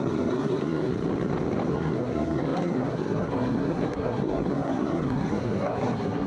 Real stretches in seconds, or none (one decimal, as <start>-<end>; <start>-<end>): 0.9-1.7